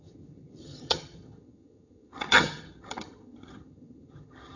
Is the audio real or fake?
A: fake